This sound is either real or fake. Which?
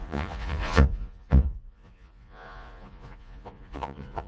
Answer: fake